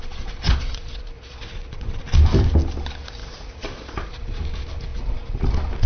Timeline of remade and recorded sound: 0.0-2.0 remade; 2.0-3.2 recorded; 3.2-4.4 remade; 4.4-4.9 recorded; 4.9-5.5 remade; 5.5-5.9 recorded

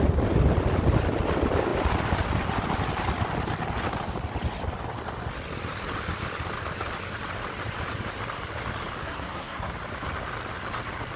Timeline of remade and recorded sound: 0.0-9.0 recorded; 9.0-9.7 remade; 9.7-11.2 recorded

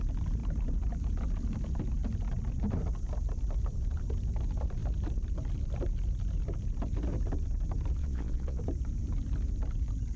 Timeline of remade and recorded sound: 0.0-8.0 recorded; 8.0-8.6 remade; 8.6-10.2 recorded

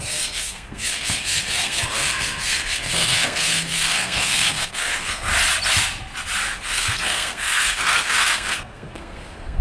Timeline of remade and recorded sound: 0.0-5.3 remade; 5.3-6.6 recorded; 6.6-9.6 remade

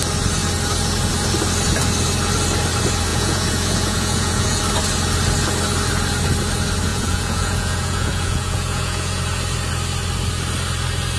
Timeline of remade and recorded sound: 0.0-3.1 recorded; 3.1-4.6 remade; 4.6-6.9 recorded; 6.9-9.2 remade; 9.2-11.2 recorded